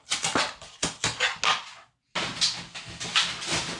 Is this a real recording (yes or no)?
yes